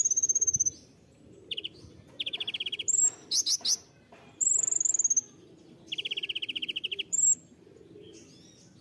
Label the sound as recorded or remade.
recorded